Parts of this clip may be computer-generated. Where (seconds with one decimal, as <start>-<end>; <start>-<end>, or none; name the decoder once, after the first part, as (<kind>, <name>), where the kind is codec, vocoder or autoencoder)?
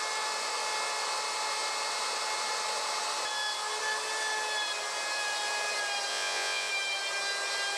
6.1-6.7 (vocoder, Vocos)